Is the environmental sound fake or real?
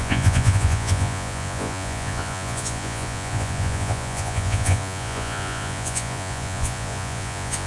fake